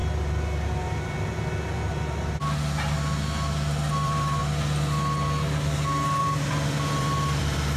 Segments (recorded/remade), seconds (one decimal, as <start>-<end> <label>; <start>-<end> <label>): 0.0-3.9 recorded; 3.9-4.4 remade; 4.4-6.2 recorded; 6.2-7.8 remade